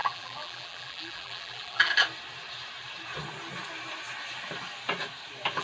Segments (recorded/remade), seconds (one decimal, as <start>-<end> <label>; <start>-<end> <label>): 0.0-1.9 remade; 1.9-5.6 recorded